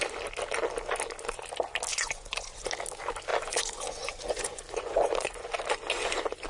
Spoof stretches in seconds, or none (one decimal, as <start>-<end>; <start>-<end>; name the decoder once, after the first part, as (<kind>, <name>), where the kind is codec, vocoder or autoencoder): 1.9-2.7 (vocoder, Vocos); 3.3-5.5